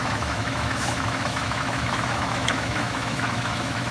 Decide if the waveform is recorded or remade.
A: remade